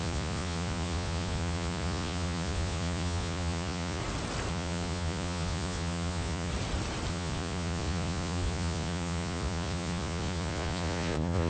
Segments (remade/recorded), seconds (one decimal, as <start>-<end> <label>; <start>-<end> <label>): 0.0-4.0 remade; 4.0-4.5 recorded; 4.5-6.5 remade; 6.5-7.1 recorded; 7.1-11.5 remade